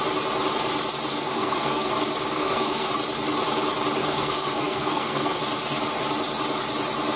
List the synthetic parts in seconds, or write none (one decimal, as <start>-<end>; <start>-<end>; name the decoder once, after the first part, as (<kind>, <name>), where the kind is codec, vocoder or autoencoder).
1.1-1.9 (codec, SNAC); 2.3-2.9; 4.0-5.4